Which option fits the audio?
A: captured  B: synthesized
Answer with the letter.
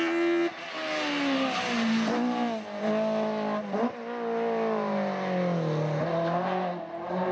A